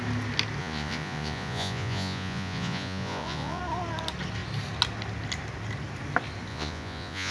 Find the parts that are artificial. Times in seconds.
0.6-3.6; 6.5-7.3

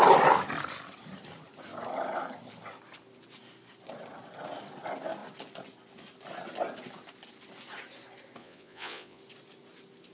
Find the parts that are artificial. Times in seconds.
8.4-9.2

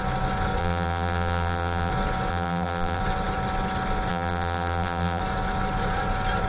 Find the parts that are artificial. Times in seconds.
0.6-1.9; 2.3-3.0; 4.1-5.2